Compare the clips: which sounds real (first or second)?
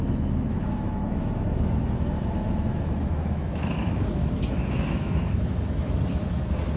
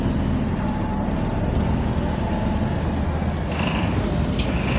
second